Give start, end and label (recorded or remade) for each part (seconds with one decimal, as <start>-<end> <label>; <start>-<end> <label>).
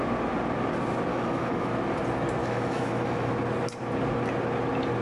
0.0-1.1 recorded; 1.1-1.7 remade; 1.7-2.4 recorded; 2.4-3.3 remade; 3.3-5.0 recorded